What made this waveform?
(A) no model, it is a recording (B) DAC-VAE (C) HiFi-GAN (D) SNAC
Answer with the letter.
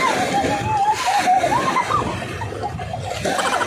A